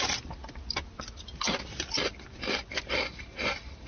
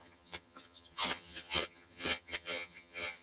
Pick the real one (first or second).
first